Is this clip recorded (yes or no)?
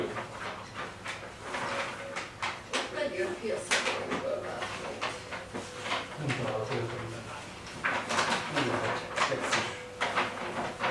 yes